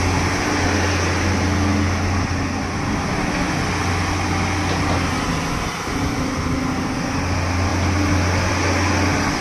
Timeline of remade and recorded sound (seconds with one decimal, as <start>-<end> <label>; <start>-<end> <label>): 0.0-9.4 recorded